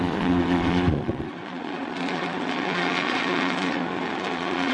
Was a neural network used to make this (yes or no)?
yes